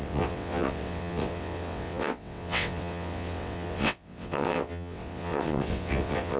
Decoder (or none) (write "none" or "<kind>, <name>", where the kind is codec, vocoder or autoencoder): vocoder, WaveNeXt